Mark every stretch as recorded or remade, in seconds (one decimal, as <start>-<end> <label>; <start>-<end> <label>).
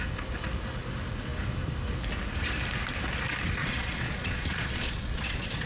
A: 0.0-3.6 recorded; 3.6-5.7 remade